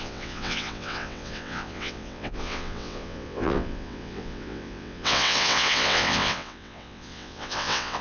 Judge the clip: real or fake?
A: fake